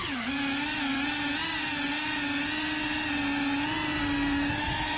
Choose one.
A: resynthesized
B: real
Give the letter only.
B